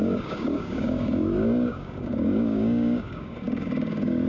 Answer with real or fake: fake